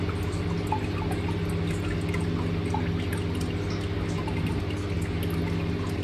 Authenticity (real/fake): real